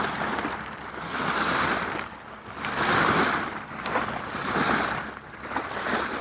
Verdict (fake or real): real